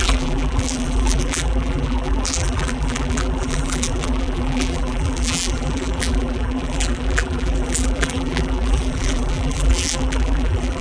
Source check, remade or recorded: remade